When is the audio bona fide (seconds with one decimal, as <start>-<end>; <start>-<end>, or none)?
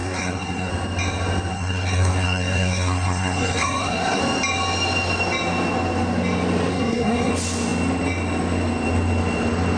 0.7-1.5; 4.2-6.7; 7.3-9.8